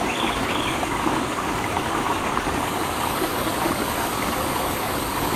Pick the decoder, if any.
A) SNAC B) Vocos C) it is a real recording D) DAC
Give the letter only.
D